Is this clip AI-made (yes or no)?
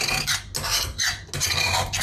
no